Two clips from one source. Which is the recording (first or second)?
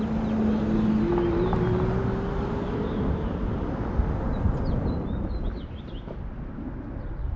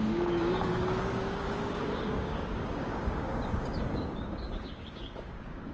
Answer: first